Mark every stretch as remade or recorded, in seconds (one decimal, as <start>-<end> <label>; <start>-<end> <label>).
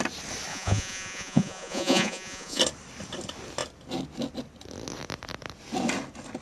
0.0-0.5 recorded; 0.5-2.6 remade; 2.6-6.4 recorded